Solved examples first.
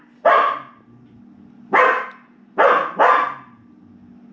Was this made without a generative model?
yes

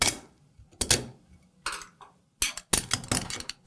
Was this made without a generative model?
yes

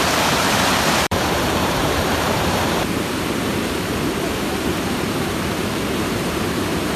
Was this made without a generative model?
no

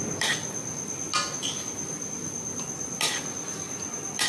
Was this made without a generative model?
yes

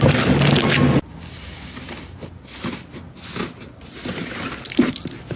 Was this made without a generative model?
yes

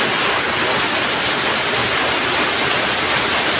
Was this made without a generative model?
yes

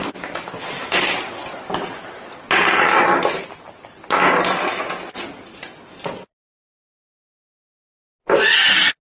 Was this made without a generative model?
yes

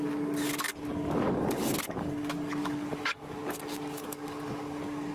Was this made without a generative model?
no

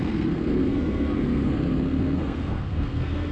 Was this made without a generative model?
no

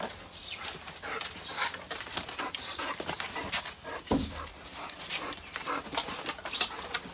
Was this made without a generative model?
yes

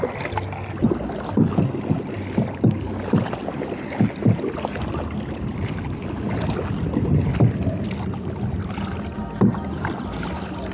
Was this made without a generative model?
yes